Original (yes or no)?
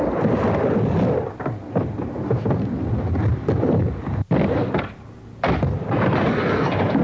yes